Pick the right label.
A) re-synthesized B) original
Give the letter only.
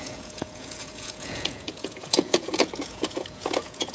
A